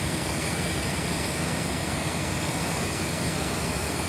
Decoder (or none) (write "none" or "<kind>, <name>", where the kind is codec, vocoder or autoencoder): codec, SNAC